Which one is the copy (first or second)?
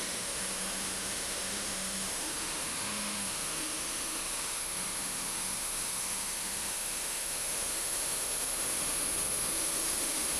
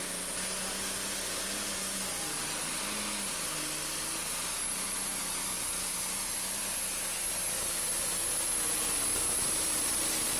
first